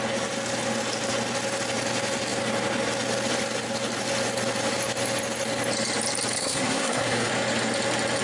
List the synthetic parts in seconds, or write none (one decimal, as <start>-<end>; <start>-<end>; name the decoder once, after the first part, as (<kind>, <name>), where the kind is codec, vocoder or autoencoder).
6.4-7.3 (codec, SNAC)